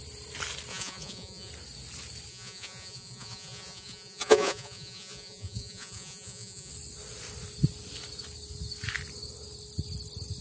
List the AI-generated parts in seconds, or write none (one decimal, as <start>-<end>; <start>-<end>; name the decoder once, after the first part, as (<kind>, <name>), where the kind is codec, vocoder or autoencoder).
0.7-1.5 (vocoder, Vocos); 2.3-6.7